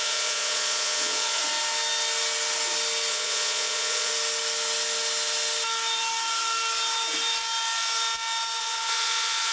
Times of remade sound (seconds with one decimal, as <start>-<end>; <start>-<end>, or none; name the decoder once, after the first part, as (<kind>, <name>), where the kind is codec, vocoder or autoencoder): 0.0-1.4 (vocoder, Vocos); 3.1-4.1; 8.6-9.5